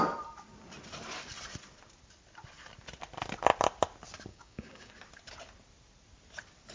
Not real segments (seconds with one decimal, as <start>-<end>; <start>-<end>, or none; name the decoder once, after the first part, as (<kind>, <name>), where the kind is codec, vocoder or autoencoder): 4.3-4.9 (codec, DAC)

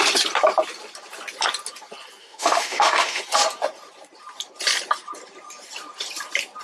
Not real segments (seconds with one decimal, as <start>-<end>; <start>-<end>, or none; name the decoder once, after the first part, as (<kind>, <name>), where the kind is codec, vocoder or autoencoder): 2.2-3.2 (autoencoder, DAC-VAE)